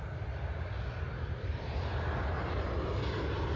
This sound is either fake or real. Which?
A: real